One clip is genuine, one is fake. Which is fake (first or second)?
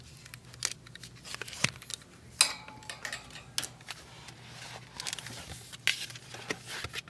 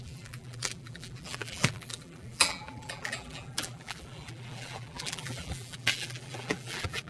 second